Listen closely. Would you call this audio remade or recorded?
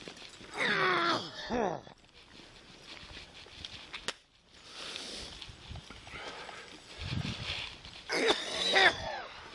recorded